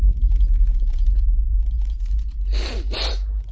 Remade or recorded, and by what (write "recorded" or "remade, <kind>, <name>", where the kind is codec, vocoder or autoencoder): remade, vocoder, BigVGAN v2